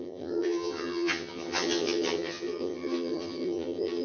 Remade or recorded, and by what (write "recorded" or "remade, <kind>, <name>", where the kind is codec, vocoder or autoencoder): remade, vocoder, HiFi-GAN